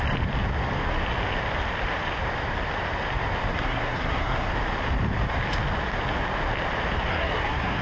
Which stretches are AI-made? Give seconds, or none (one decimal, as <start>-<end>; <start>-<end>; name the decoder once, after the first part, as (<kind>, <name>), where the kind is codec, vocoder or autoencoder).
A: 3.5-4.5 (codec, SNAC); 7.1-7.8